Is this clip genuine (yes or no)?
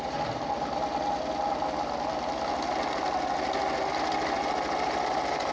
yes